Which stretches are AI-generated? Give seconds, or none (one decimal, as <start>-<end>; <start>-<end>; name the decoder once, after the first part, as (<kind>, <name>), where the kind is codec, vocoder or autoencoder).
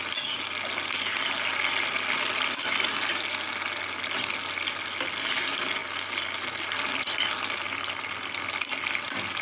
none